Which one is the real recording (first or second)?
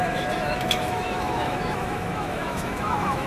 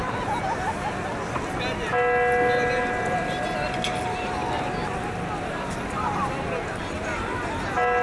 second